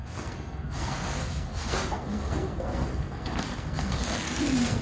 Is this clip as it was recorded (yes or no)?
no